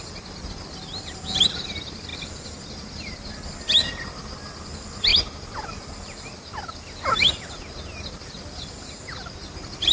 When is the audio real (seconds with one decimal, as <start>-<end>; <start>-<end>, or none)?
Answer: 0.0-9.9